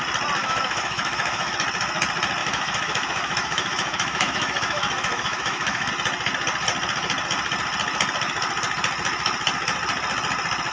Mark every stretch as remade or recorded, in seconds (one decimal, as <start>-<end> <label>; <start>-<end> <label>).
0.0-0.4 recorded; 0.4-1.5 remade; 1.5-2.4 recorded; 2.4-5.9 remade; 5.9-10.7 recorded